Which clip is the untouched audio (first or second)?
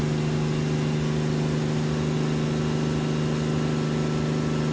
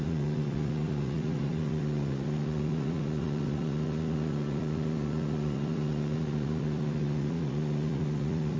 first